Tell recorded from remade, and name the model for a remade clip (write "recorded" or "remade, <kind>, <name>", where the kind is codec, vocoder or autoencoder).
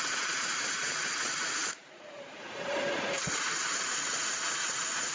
remade, vocoder, Vocos